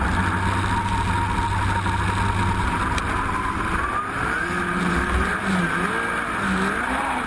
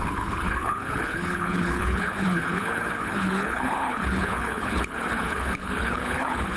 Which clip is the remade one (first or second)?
second